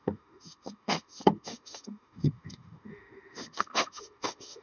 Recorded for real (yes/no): no